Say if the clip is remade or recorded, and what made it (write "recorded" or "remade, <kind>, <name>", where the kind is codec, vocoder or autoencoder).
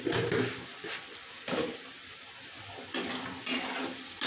recorded